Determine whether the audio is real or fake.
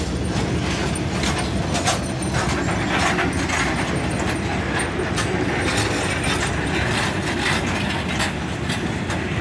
real